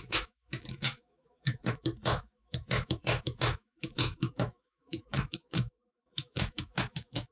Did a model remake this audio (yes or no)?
yes